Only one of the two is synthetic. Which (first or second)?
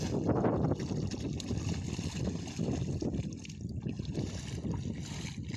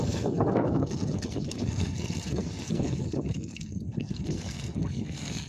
second